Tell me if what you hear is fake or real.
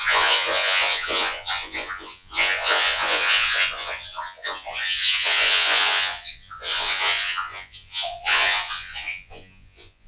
fake